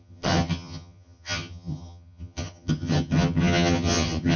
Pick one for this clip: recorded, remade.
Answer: remade